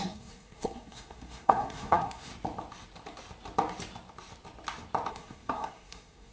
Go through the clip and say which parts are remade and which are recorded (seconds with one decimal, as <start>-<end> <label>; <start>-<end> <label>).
0.0-2.3 remade; 2.3-5.1 recorded; 5.1-6.3 remade